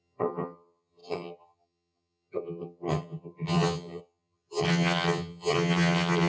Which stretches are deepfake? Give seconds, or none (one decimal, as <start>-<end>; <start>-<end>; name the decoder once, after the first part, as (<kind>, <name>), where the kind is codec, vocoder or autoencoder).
0.0-6.3 (vocoder, HiFi-GAN)